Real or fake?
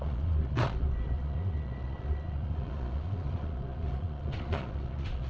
fake